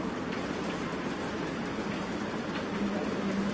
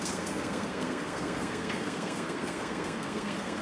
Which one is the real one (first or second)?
first